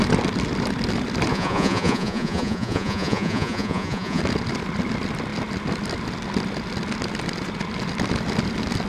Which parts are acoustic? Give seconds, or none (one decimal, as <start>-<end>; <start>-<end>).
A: 0.0-1.3; 4.2-8.9